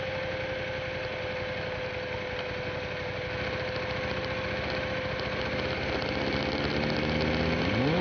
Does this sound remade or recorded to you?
recorded